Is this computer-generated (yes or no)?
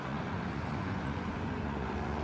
yes